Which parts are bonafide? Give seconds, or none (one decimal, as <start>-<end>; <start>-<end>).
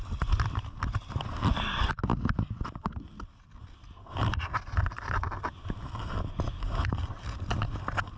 0.0-8.2